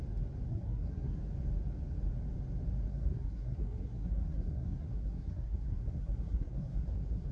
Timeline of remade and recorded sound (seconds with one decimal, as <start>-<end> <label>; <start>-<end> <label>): 0.0-0.5 recorded; 0.5-1.2 remade; 1.2-2.9 recorded; 2.9-7.3 remade